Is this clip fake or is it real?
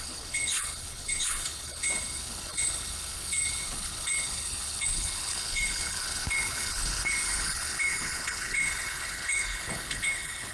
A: fake